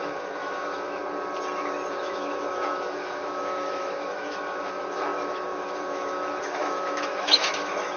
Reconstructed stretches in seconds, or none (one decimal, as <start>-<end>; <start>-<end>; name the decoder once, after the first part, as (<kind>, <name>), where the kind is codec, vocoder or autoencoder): 0.0-1.0 (autoencoder, DAC-VAE); 1.9-8.0